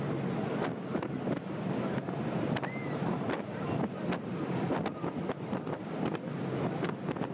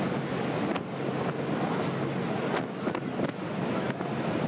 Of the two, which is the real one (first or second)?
second